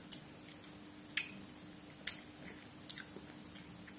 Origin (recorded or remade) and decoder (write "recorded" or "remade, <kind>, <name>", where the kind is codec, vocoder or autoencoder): recorded